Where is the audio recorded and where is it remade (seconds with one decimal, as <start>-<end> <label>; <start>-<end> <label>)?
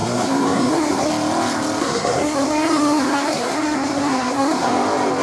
0.0-1.1 remade; 1.1-1.8 recorded; 1.8-4.7 remade; 4.7-5.2 recorded